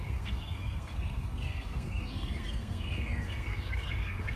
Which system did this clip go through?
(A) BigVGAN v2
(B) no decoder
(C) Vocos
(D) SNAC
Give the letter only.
D